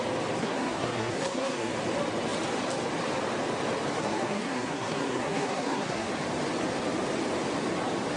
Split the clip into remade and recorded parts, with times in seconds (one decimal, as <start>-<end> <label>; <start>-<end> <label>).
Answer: 0.0-0.4 recorded; 0.4-1.7 remade; 1.7-4.0 recorded; 4.0-6.1 remade; 6.1-8.2 recorded